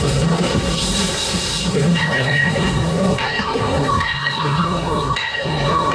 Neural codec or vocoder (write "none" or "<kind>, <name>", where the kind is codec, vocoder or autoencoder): codec, SNAC